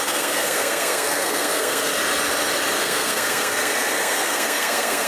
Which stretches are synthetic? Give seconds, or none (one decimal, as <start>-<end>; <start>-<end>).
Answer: 0.0-1.9; 2.8-5.1